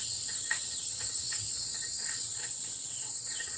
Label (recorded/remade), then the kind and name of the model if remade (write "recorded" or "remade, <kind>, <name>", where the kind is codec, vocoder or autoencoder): remade, vocoder, WaveNeXt